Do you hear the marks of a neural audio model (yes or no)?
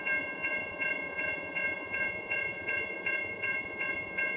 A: yes